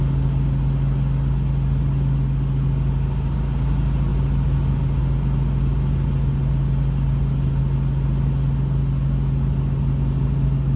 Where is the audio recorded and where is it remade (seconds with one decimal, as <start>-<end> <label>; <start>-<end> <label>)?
0.0-10.8 recorded

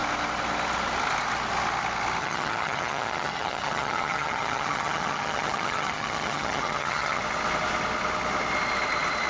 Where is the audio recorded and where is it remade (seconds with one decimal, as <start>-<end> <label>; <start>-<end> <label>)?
0.0-2.2 recorded; 2.2-7.2 remade; 7.2-9.3 recorded